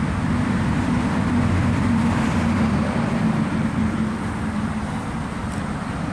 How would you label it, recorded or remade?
remade